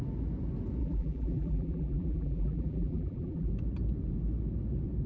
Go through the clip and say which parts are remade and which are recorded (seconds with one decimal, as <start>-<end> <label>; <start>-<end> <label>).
0.0-0.8 recorded; 0.8-3.5 remade; 3.5-5.1 recorded